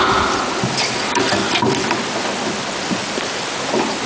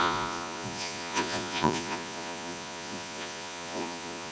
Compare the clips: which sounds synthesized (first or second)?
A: second